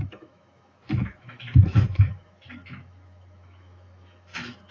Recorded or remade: remade